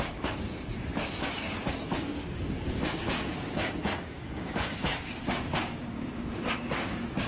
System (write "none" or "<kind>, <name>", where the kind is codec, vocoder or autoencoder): codec, DAC